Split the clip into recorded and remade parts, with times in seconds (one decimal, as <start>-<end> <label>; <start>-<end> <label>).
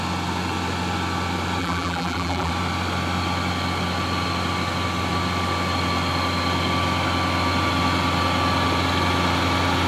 0.0-1.6 recorded; 1.6-2.5 remade; 2.5-9.9 recorded